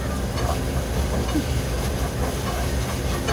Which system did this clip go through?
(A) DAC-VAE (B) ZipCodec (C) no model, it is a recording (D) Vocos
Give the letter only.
C